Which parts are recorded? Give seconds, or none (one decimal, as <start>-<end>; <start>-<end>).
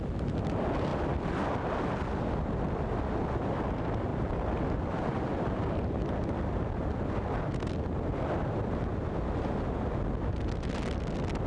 0.0-4.1; 7.7-11.5